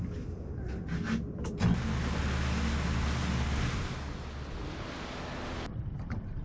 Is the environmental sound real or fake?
real